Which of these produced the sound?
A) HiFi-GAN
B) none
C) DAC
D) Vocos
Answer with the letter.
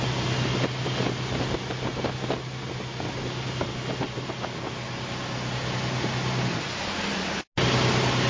B